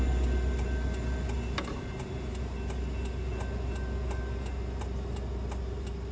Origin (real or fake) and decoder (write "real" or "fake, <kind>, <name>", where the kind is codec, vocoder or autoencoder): real